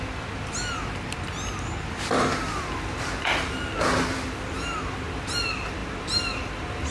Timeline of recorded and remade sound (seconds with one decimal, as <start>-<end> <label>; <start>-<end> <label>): 0.0-5.8 recorded; 5.8-6.4 remade; 6.4-6.9 recorded